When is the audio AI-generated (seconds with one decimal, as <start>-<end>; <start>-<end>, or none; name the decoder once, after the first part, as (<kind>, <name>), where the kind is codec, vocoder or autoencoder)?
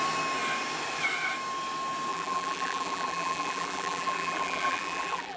2.1-5.4 (vocoder, BigVGAN v2)